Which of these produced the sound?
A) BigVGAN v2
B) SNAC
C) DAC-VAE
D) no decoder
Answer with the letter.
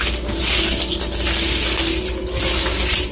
D